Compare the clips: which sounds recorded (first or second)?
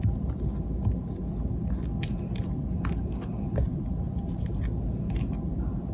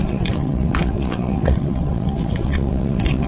first